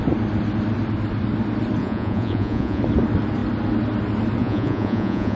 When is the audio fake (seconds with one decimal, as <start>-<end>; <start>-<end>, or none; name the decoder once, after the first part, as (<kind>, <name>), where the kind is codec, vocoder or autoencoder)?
1.8-2.8 (vocoder, Vocos); 4.4-5.4